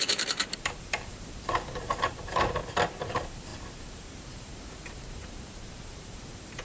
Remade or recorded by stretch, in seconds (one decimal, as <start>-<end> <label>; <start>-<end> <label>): 0.0-2.6 remade; 2.6-3.1 recorded; 3.1-6.6 remade